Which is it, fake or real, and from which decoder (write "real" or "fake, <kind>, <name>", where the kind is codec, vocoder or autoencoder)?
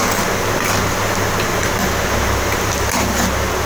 real